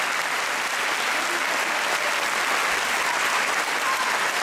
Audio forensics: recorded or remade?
recorded